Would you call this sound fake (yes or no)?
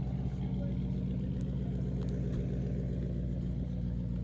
no